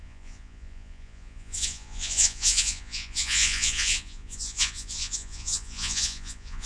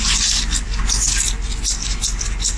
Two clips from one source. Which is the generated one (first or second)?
first